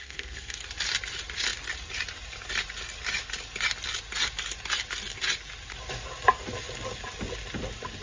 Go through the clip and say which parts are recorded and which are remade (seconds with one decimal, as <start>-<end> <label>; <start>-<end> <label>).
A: 0.0-0.6 remade; 0.6-8.0 recorded